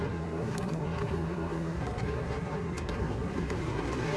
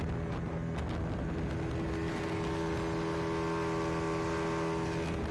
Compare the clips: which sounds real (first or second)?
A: second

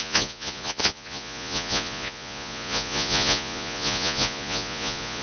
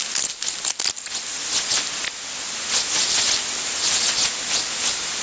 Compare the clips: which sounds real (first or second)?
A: second